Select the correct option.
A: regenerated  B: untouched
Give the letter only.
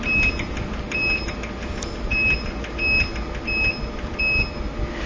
B